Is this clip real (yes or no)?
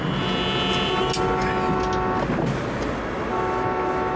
yes